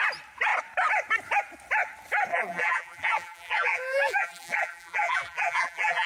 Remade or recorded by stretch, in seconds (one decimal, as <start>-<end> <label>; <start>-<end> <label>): 0.0-2.3 recorded; 2.3-6.1 remade